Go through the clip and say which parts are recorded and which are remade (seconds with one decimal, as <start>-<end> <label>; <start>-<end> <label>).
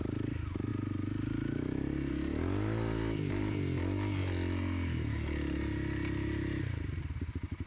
0.0-7.7 recorded